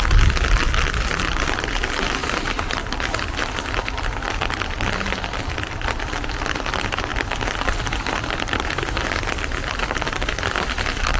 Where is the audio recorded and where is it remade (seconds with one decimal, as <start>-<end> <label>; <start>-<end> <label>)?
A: 0.0-7.1 remade; 7.1-7.8 recorded; 7.8-11.2 remade